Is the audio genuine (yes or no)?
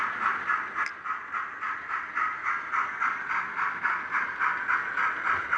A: yes